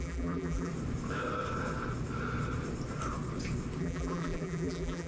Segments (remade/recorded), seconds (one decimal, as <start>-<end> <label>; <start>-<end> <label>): 0.0-0.7 remade; 0.7-3.8 recorded; 3.8-5.1 remade